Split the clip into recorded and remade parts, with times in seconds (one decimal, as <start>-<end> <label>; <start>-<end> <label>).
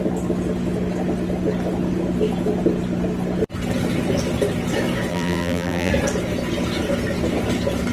0.0-5.1 recorded; 5.1-5.9 remade; 5.9-7.9 recorded